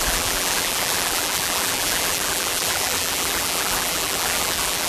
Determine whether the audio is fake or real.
fake